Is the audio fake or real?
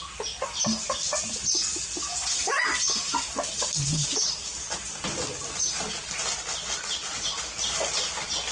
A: real